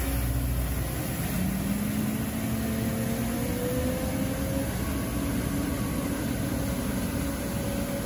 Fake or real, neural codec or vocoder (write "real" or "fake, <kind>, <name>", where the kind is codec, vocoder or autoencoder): real